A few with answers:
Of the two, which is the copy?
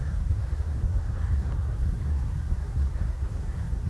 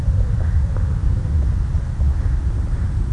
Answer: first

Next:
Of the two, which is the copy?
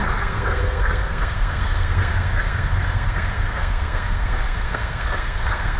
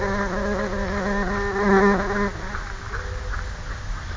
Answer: first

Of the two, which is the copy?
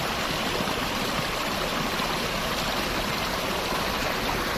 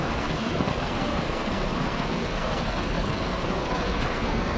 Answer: second